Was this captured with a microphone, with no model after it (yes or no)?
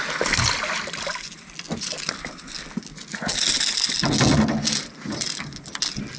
yes